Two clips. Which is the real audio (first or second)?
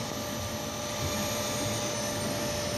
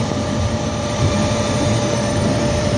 first